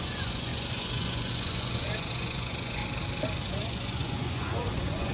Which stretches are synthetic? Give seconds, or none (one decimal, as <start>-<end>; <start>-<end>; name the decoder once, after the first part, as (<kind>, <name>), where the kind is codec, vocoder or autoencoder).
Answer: 0.0-2.8 (vocoder, Vocos); 3.4-5.1